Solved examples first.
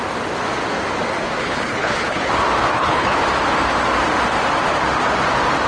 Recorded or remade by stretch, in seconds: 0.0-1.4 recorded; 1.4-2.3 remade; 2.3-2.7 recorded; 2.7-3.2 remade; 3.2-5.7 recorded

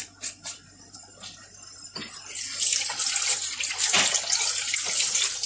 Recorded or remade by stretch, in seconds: 0.0-5.5 recorded